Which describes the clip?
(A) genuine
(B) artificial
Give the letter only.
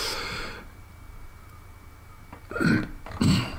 B